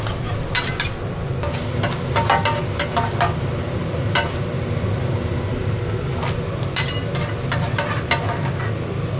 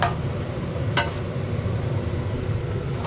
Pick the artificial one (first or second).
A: second